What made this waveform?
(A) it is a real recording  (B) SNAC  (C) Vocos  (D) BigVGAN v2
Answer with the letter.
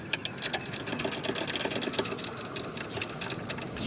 A